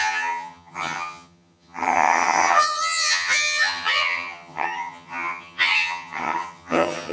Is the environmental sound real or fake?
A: fake